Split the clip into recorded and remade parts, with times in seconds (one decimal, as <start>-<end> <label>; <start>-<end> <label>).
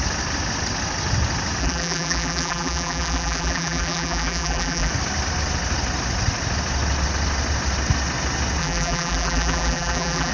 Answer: 0.0-1.6 recorded; 1.6-4.9 remade; 4.9-8.6 recorded; 8.6-10.3 remade